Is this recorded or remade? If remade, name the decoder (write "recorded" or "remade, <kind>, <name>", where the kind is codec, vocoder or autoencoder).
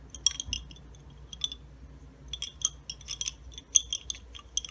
recorded